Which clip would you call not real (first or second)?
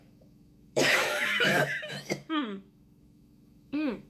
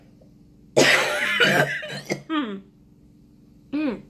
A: first